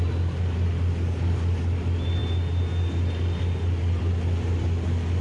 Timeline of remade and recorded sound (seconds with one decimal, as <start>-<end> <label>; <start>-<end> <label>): 0.0-5.2 recorded